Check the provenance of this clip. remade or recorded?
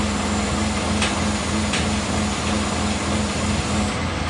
recorded